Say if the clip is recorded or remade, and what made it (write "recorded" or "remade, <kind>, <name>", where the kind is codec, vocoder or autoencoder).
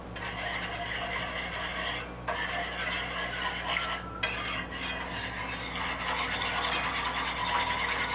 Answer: recorded